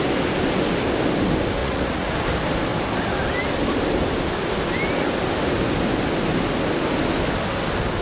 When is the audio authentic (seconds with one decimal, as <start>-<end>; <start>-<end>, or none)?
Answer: 0.0-1.6; 2.1-8.0